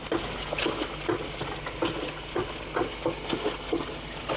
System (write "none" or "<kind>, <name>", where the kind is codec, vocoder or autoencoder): none